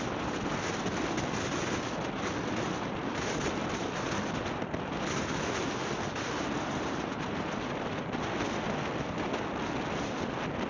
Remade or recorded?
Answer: recorded